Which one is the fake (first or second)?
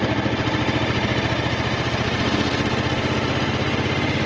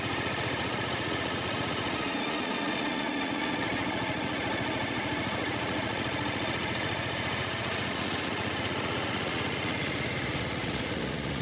second